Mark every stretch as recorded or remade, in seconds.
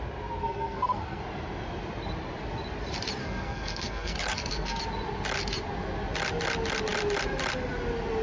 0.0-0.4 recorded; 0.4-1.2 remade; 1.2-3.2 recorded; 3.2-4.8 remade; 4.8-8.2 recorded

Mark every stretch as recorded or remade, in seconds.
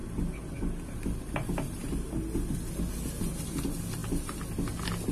0.0-5.1 recorded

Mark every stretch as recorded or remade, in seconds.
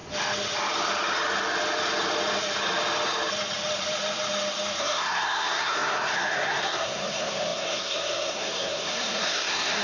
0.0-4.8 recorded; 4.8-9.8 remade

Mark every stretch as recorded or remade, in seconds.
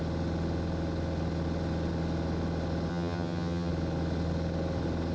0.0-2.9 recorded; 2.9-3.7 remade; 3.7-5.1 recorded